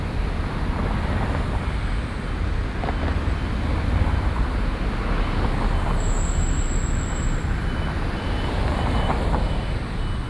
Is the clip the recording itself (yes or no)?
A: yes